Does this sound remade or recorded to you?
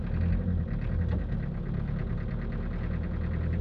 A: recorded